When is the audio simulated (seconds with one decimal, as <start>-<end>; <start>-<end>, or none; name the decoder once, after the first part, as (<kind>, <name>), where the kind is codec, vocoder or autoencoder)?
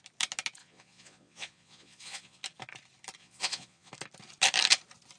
0.6-2.4 (vocoder, Vocos); 3.2-3.9